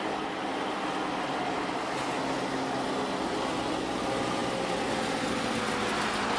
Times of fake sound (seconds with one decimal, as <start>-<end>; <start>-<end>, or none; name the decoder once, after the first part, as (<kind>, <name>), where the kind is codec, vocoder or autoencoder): none

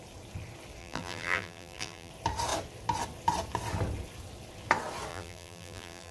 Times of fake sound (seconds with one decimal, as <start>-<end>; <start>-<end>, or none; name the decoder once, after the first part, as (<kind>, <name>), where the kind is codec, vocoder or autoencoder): 0.8-2.1 (vocoder, BigVGAN v2); 5.1-6.1